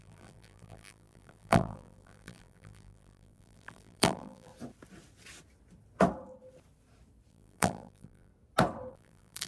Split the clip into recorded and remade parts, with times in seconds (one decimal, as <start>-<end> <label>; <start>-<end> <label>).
0.0-4.5 remade; 4.5-7.3 recorded; 7.3-8.3 remade; 8.3-8.9 recorded; 8.9-9.5 remade